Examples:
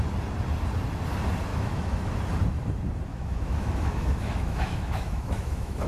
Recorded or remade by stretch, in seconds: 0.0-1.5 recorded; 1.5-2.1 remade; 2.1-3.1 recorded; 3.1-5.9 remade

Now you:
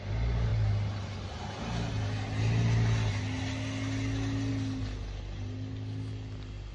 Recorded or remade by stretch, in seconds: 0.0-6.7 recorded